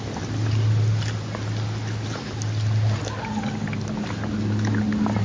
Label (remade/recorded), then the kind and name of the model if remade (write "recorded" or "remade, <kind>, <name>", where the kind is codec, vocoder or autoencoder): recorded